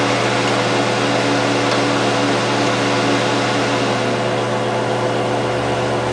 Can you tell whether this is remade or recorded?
recorded